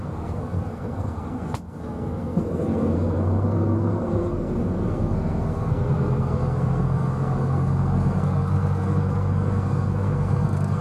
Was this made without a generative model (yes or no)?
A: no